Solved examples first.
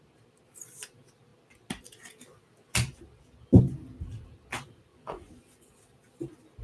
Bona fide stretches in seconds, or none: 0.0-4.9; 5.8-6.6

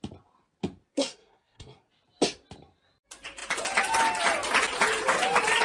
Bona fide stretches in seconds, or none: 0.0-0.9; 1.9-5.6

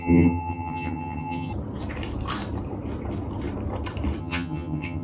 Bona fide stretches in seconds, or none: 1.5-4.2

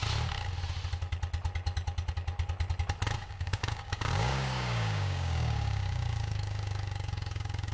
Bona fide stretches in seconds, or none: 0.0-3.2

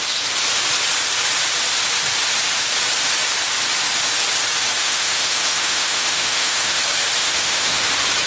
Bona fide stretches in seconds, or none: 0.0-4.8; 6.8-7.2; 7.9-8.3

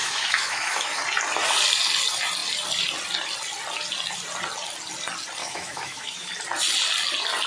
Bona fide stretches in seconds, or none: 1.0-5.4; 6.3-7.5

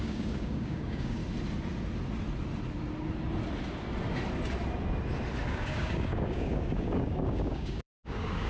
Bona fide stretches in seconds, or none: 1.2-5.5